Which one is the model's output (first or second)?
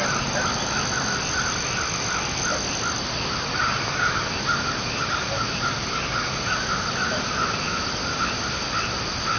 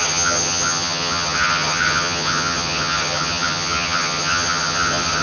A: second